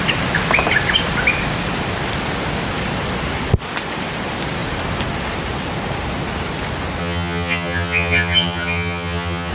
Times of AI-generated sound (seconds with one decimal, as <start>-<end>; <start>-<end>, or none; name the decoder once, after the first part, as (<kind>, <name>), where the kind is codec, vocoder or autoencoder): 7.0-9.5 (vocoder, HiFi-GAN)